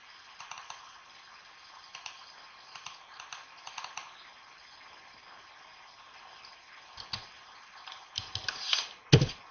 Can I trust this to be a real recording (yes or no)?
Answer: yes